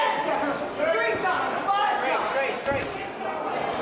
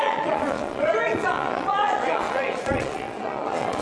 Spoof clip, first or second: second